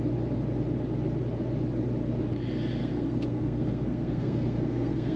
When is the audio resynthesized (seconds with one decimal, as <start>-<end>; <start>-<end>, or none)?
2.8-5.2